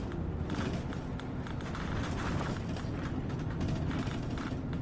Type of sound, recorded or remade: recorded